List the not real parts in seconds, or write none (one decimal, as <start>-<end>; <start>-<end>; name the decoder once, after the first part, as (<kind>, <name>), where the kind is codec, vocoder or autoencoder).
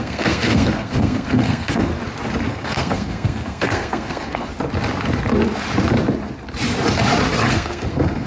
0.0-1.9 (codec, SNAC); 2.5-4.5; 7.5-8.3